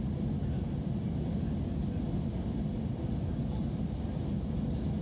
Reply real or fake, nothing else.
real